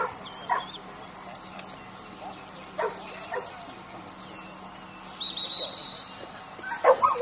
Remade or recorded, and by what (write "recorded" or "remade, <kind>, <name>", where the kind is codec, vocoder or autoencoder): recorded